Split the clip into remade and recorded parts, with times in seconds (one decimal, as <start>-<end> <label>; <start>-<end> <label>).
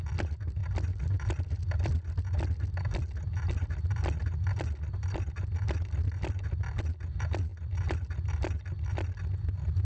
0.0-9.8 recorded